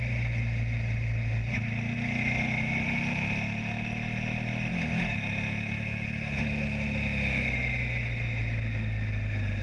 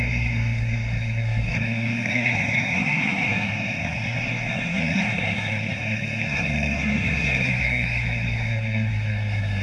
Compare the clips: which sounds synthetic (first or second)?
second